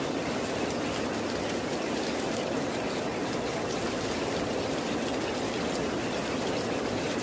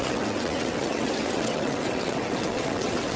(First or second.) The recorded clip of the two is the first